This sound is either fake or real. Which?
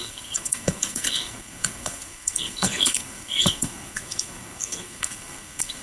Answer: fake